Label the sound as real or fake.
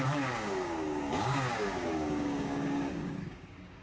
fake